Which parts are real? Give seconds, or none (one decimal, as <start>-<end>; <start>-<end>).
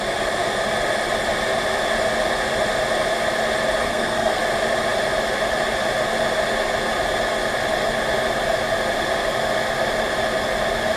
0.0-3.8; 4.4-11.0